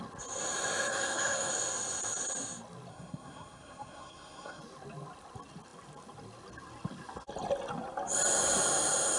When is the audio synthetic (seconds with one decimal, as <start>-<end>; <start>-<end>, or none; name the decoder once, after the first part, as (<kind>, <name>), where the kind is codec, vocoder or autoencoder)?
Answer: 0.9-1.5 (codec, SNAC); 2.9-4.6